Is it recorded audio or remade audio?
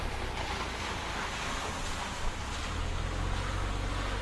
recorded